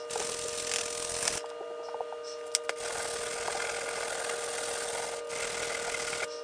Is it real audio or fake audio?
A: real